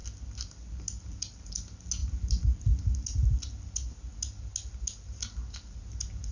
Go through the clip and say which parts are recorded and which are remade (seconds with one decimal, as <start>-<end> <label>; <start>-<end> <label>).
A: 0.0-6.3 recorded